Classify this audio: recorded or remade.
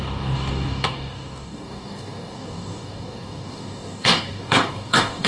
remade